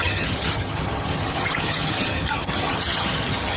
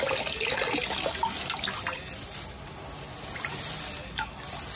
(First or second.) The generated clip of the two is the first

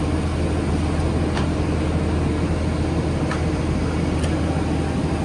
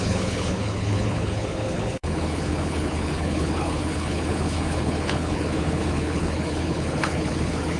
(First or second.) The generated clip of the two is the second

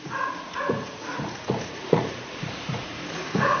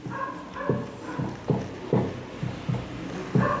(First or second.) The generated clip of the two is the first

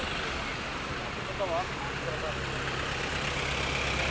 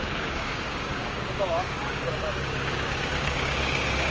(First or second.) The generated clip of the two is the second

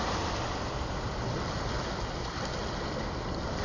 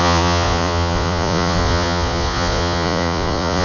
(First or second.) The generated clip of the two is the second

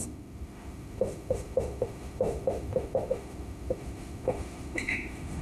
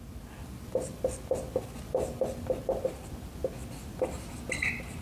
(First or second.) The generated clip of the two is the first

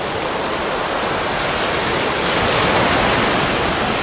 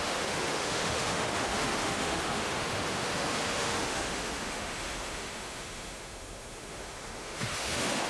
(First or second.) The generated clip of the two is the second